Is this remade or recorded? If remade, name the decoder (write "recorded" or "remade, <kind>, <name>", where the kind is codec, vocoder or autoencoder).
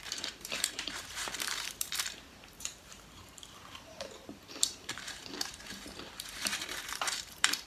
remade, vocoder, BigVGAN v2